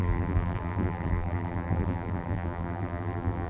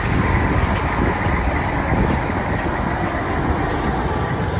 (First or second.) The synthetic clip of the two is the first